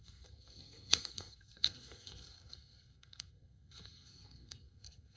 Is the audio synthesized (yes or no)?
yes